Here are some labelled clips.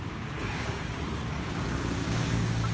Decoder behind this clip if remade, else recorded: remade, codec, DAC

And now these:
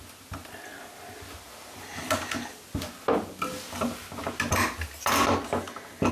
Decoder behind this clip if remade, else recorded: recorded